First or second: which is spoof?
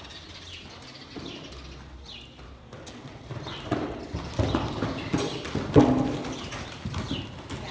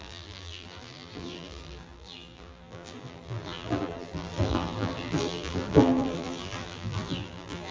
second